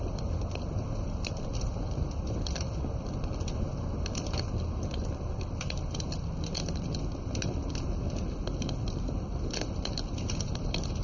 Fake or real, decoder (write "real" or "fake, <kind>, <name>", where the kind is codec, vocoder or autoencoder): real